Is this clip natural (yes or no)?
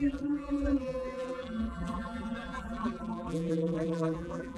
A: no